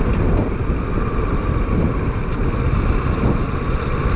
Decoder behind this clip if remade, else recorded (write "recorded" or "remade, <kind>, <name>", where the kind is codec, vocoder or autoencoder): recorded